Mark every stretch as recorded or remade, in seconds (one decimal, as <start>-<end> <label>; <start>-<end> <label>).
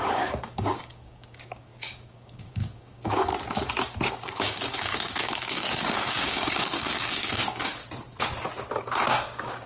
0.0-3.3 remade; 3.3-4.1 recorded; 4.1-7.8 remade; 7.8-8.8 recorded; 8.8-9.7 remade